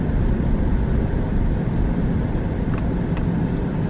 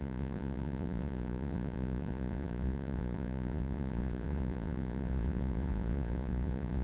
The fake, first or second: second